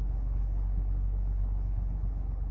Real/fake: fake